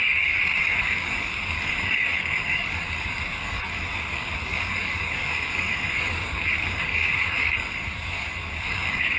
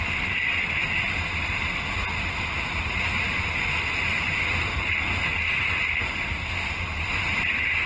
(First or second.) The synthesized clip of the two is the first